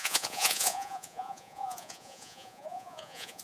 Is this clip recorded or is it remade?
remade